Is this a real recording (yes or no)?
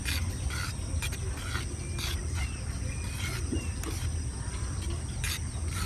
yes